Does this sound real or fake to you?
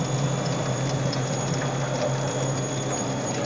real